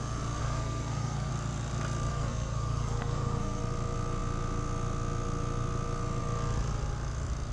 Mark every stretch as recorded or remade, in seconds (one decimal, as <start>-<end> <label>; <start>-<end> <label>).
0.0-0.4 recorded; 0.4-1.3 remade; 1.3-2.1 recorded; 2.1-3.6 remade; 3.6-7.5 recorded